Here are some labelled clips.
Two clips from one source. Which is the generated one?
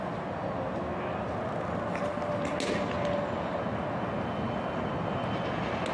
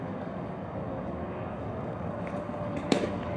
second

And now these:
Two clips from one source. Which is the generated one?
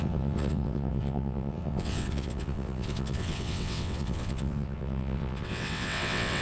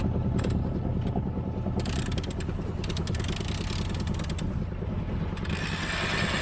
first